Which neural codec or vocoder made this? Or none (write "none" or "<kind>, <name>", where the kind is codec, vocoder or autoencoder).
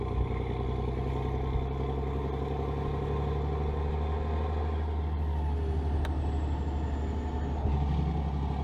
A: none